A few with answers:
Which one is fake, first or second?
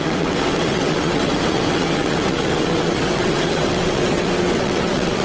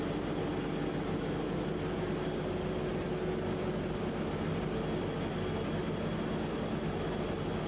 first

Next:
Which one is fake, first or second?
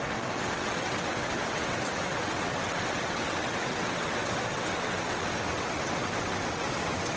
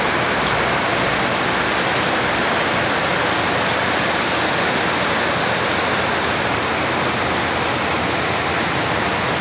first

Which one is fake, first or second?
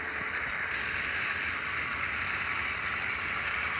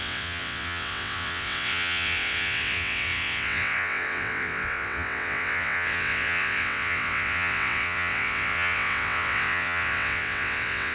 second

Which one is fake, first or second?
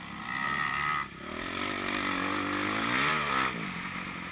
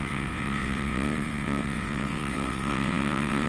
second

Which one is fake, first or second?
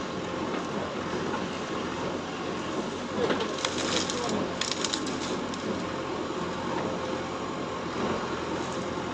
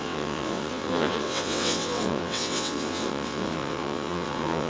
second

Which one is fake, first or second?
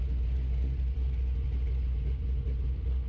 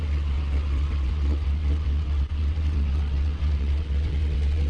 second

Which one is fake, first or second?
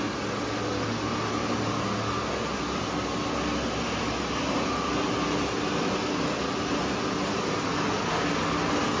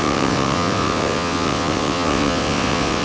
second